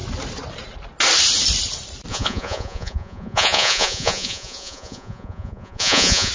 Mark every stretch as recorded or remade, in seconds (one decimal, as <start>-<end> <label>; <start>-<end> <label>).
0.0-2.1 recorded; 2.1-6.3 remade